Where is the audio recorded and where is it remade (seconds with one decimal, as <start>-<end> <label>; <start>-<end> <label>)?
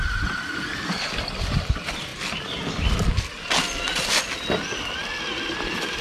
0.0-2.1 recorded; 2.1-3.1 remade; 3.1-5.3 recorded; 5.3-6.0 remade